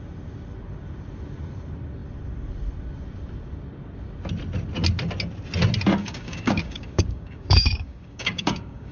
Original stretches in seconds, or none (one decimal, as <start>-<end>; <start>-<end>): 0.0-6.0